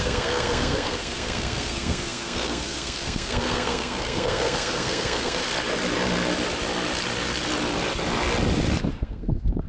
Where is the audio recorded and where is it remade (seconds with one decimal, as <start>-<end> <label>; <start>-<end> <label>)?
0.0-5.4 remade; 5.4-8.9 recorded; 8.9-9.7 remade